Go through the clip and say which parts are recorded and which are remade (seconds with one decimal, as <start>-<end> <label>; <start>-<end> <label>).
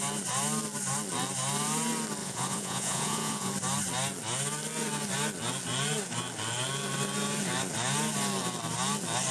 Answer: 0.0-2.2 recorded; 2.2-3.5 remade; 3.5-9.3 recorded